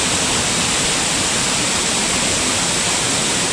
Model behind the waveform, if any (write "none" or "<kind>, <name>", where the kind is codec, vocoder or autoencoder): none